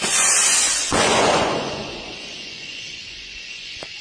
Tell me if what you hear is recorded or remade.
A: remade